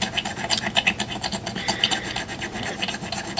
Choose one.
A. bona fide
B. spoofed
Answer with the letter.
A